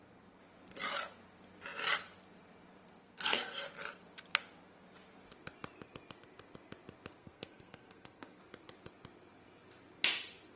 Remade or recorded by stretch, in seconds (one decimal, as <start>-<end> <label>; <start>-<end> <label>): 0.0-3.0 recorded; 3.0-3.7 remade; 3.7-7.2 recorded; 7.2-8.4 remade; 8.4-10.6 recorded